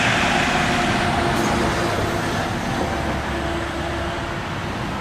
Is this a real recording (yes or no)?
yes